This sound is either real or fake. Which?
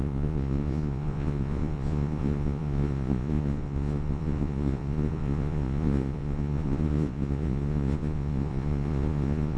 fake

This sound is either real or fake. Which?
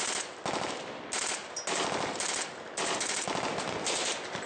real